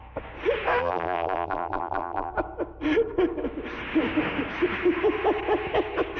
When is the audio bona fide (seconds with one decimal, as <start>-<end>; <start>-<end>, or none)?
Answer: 0.0-0.8; 2.3-6.2